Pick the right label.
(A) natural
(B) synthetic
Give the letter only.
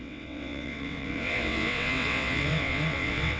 B